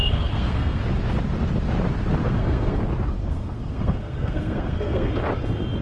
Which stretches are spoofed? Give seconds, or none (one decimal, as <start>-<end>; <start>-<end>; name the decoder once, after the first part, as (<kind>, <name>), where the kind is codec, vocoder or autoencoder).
0.0-0.8 (codec, SNAC); 2.2-2.8; 3.2-5.1